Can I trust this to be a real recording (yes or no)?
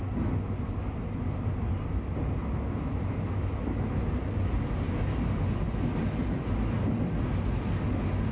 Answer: yes